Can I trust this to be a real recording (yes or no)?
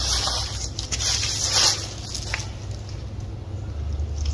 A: yes